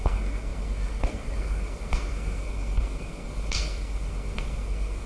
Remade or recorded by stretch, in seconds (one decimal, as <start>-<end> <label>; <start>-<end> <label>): 0.0-5.1 remade